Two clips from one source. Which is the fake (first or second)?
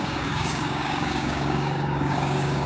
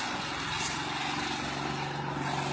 first